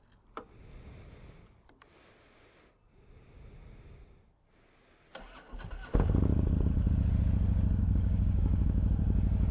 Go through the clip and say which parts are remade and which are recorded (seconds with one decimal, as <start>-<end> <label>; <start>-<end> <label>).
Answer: 0.0-7.8 recorded; 7.8-9.0 remade; 9.0-9.5 recorded